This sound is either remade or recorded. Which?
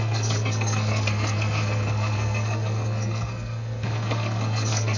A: remade